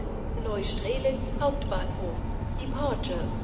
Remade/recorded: recorded